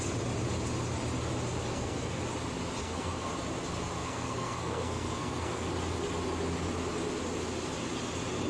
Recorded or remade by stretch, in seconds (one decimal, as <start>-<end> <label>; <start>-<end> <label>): 0.0-1.7 recorded; 1.7-2.2 remade; 2.2-2.8 recorded; 2.8-3.3 remade; 3.3-4.0 recorded; 4.0-5.7 remade; 5.7-8.5 recorded